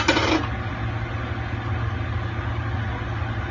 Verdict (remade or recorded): recorded